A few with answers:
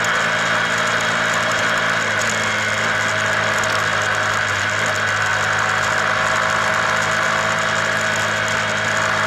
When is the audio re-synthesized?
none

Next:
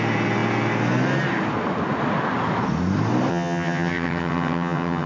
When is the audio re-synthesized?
3.3-5.1 (vocoder, HiFi-GAN)

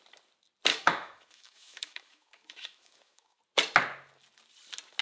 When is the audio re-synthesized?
0.7-3.4 (autoencoder, DAC-VAE)

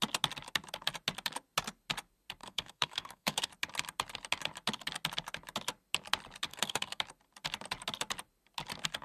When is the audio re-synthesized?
2.4-3.5 (codec, SNAC); 6.5-7.0

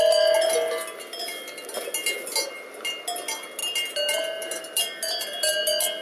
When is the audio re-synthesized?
none

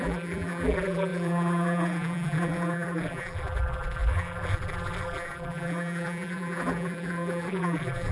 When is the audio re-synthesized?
0.0-8.1 (vocoder, BigVGAN v2)

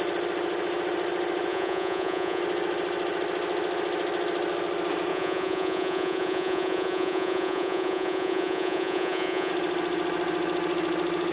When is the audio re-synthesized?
1.5-2.4 (vocoder, Vocos); 5.1-9.5